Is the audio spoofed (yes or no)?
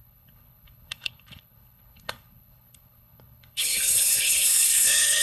yes